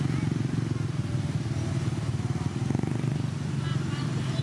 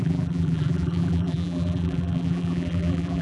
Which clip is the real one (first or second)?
first